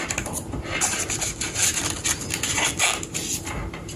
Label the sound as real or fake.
real